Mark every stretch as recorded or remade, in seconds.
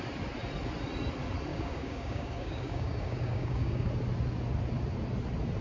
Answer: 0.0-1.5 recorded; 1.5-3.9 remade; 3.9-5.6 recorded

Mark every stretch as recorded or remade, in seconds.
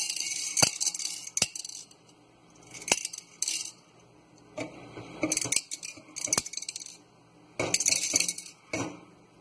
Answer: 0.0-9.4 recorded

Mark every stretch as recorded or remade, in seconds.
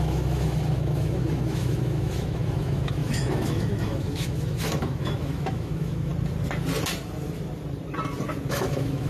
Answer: 0.0-6.1 remade; 6.1-8.5 recorded; 8.5-9.1 remade